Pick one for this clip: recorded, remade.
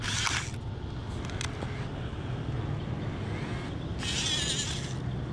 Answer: recorded